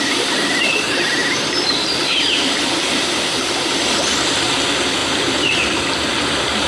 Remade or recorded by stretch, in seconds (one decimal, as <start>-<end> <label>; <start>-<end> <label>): 0.0-1.2 recorded; 1.2-2.1 remade; 2.1-5.0 recorded; 5.0-5.6 remade; 5.6-6.7 recorded